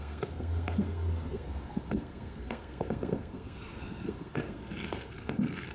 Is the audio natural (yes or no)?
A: no